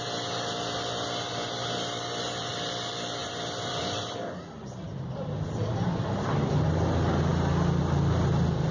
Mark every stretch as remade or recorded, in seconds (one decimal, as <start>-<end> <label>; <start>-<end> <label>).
0.0-3.2 recorded; 3.2-6.5 remade; 6.5-8.7 recorded